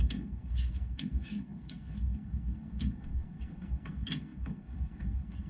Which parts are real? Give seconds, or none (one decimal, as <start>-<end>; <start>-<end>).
none

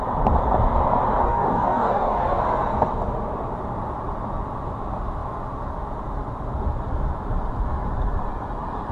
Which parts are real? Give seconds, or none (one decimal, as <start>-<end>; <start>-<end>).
0.0-1.2; 2.4-8.9

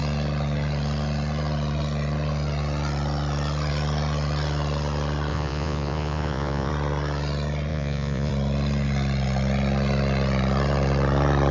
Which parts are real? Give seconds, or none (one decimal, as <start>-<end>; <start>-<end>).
0.0-5.3; 6.7-7.7; 8.3-11.5

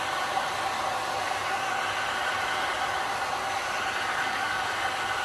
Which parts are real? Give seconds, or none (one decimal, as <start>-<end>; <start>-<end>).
0.0-4.1; 4.6-5.2

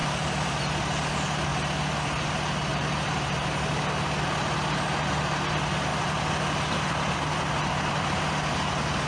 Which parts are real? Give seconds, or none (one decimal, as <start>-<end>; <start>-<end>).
0.6-2.7; 3.4-5.9; 8.2-9.1